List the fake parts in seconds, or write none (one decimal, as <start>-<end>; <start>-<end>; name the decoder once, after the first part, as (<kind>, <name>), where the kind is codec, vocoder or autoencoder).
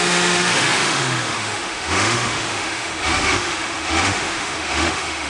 0.0-5.3 (autoencoder, DAC-VAE)